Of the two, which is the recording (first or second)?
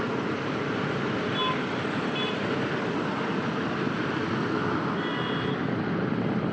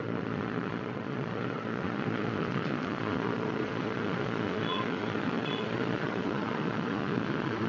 first